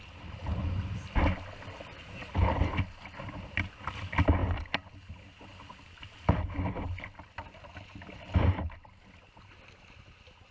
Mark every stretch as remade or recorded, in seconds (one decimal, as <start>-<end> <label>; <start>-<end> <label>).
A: 0.0-10.5 recorded